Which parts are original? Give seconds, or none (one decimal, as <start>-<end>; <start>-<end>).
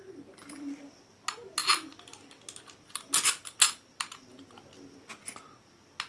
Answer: 0.0-6.1